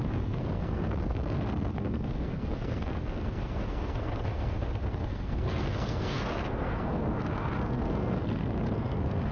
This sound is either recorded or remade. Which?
remade